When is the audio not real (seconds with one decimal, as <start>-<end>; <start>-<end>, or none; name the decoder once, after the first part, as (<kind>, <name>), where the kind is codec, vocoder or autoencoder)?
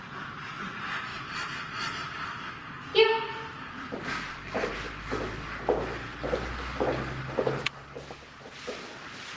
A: 1.1-2.5 (vocoder, BigVGAN v2)